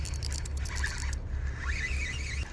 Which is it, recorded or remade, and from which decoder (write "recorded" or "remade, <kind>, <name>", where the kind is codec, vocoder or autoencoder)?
recorded